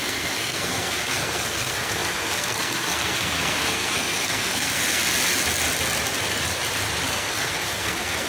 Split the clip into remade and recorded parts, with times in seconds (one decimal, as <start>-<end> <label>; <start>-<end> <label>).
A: 0.0-5.0 remade; 5.0-7.1 recorded; 7.1-8.3 remade